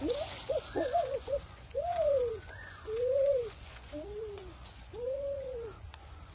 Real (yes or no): no